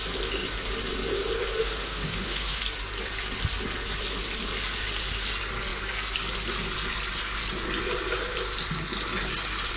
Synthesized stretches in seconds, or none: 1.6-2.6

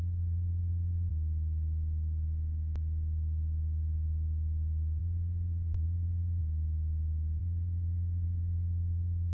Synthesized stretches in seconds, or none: 0.0-1.1; 5.0-6.4; 7.4-9.3

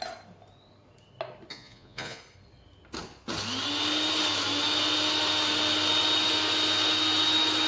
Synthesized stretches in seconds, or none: 1.5-2.2

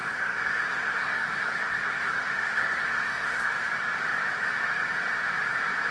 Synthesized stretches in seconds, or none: 0.0-3.5

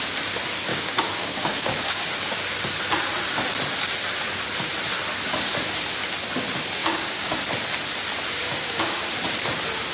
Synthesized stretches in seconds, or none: 0.7-2.1; 6.8-7.4; 8.4-9.0

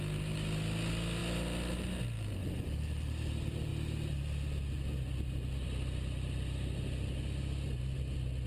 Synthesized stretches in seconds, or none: none

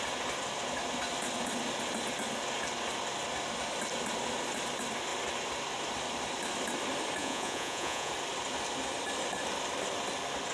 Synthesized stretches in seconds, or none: 7.2-8.1